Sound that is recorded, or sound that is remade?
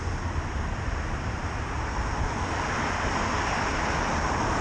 recorded